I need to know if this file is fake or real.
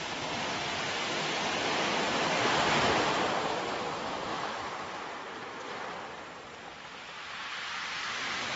real